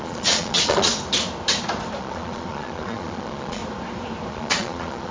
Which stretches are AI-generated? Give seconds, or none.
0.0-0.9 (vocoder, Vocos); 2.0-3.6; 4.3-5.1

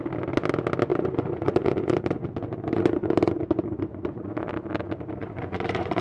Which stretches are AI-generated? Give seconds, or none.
0.9-4.5 (vocoder, Vocos); 5.2-6.0

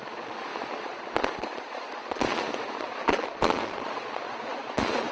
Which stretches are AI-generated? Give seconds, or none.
0.0-5.1 (vocoder, Vocos)

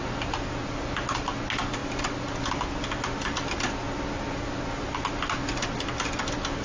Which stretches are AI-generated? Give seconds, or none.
none

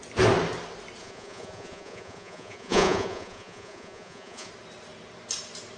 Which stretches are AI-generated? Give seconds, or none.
1.0-4.5 (vocoder, Vocos)

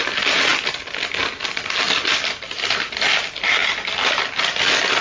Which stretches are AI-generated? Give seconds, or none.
none

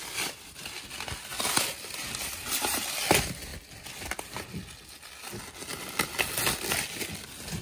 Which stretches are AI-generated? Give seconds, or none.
none